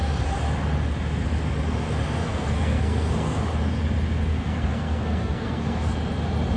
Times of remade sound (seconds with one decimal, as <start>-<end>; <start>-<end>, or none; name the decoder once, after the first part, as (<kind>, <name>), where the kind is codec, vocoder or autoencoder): 2.2-3.4 (codec, SNAC); 4.3-6.0